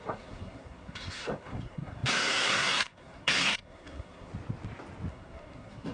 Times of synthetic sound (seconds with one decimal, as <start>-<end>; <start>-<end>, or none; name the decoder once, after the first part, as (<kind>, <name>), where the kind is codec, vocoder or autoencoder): 0.0-4.3 (codec, SNAC); 5.1-5.9